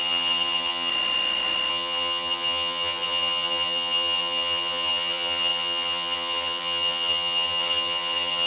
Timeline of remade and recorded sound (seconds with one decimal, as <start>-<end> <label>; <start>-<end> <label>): 0.0-0.9 remade; 0.9-1.7 recorded; 1.7-8.5 remade